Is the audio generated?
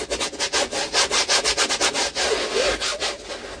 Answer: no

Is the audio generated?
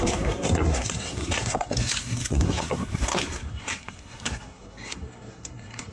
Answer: yes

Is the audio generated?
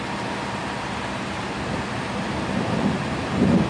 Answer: no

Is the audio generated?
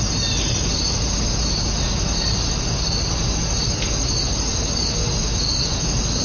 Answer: no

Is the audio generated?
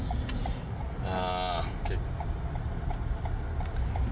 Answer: no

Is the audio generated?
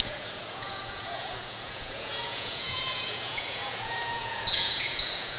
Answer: yes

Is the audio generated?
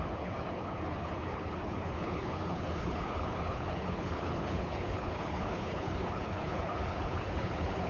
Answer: yes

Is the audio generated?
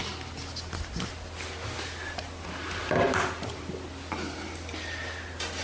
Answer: no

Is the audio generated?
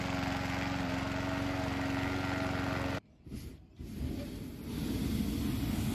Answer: no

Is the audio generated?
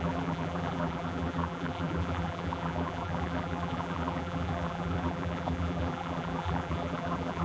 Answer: yes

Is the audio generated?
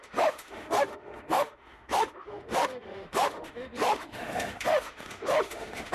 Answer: yes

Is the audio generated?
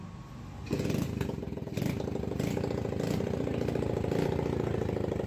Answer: no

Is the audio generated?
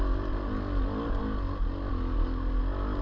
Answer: no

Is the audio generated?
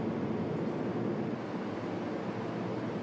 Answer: no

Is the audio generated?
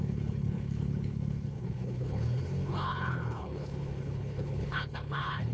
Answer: yes